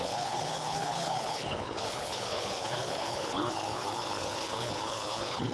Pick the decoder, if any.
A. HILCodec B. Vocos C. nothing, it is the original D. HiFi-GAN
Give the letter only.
A